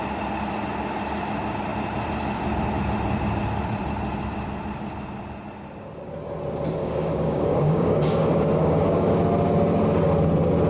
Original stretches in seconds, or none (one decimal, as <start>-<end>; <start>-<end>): 0.0-6.8; 9.1-10.7